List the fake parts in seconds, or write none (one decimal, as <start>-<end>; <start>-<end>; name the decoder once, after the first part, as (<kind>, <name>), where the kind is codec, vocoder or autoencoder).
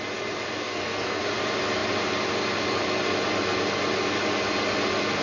0.6-1.2 (codec, SNAC)